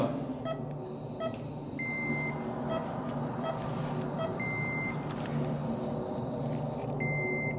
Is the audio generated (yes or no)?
no